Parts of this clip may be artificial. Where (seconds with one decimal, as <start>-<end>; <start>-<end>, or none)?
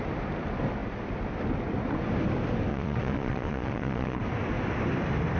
2.7-4.2